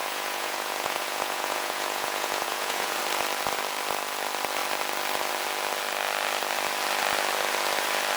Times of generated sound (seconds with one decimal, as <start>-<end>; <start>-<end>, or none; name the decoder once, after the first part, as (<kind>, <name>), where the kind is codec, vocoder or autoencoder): 0.0-3.0 (vocoder, Vocos)